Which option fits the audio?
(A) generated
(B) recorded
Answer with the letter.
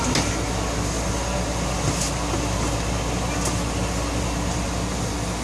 B